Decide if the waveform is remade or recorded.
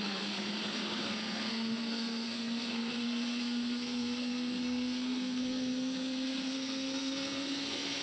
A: remade